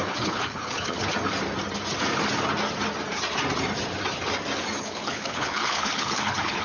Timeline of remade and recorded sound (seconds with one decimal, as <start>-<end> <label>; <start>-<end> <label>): 0.0-1.1 remade; 1.1-4.8 recorded; 4.8-6.6 remade